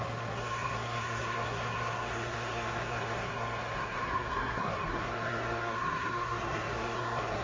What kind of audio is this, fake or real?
fake